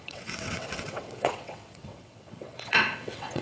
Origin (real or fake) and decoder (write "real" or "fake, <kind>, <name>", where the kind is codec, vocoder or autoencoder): fake, vocoder, WaveNeXt